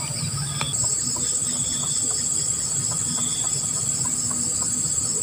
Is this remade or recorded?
recorded